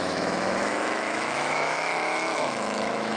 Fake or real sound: fake